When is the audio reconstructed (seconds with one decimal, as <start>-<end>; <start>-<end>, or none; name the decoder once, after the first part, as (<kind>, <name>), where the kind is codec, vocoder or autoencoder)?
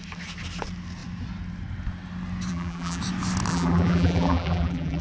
2.5-3.0 (vocoder, BigVGAN v2); 3.5-5.0